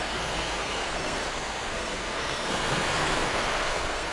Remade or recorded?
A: remade